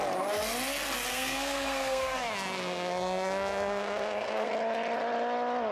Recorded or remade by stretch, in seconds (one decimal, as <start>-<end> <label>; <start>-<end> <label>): 0.0-1.1 recorded; 1.1-4.5 remade; 4.5-5.7 recorded